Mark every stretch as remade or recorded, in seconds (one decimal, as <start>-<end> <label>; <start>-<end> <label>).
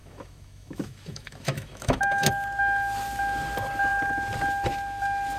0.0-2.3 remade; 2.3-5.4 recorded